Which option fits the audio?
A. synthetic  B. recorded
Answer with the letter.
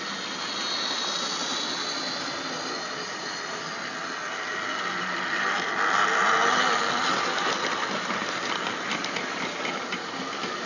B